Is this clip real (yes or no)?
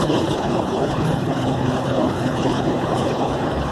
no